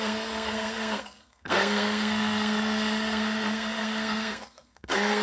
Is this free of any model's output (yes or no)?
no